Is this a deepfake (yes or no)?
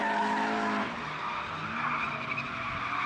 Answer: no